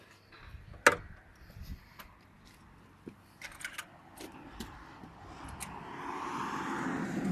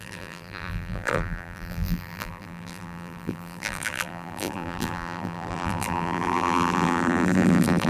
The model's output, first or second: second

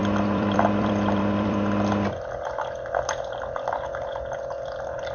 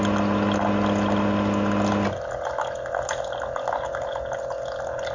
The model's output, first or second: first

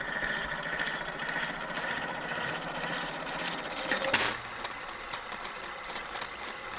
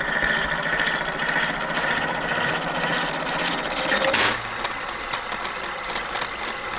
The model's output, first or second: first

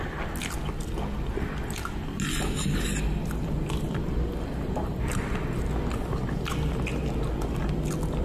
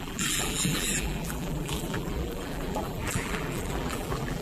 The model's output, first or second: second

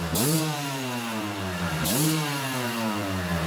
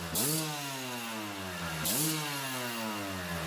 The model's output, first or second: first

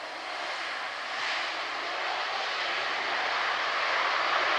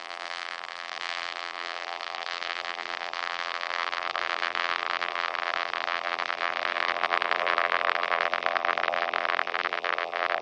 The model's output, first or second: second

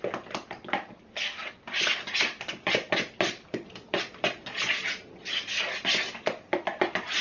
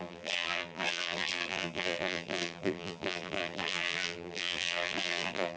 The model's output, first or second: second